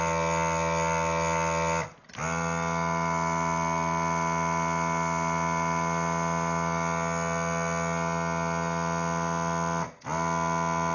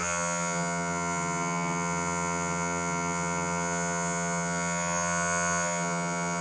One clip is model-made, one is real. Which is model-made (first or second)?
second